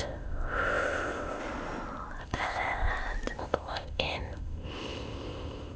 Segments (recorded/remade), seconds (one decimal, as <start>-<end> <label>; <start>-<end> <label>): 0.0-1.4 remade; 1.4-2.2 recorded; 2.2-2.9 remade; 2.9-3.4 recorded; 3.4-5.8 remade